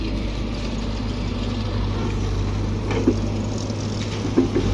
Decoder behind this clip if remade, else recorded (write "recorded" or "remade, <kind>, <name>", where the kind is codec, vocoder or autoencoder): recorded